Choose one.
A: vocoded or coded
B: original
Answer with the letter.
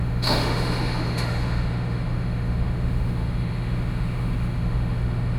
A